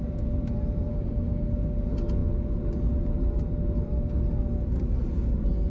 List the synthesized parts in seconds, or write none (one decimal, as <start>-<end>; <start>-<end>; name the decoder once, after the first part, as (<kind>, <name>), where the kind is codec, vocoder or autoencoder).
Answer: 0.9-1.5 (autoencoder, DAC-VAE)